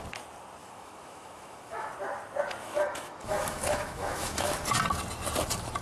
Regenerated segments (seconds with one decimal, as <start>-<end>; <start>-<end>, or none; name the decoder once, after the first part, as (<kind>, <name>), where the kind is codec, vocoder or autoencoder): 0.6-1.9 (autoencoder, DAC-VAE); 2.6-4.6